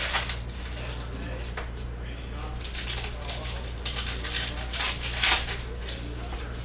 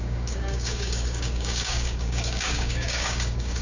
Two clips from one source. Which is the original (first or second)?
first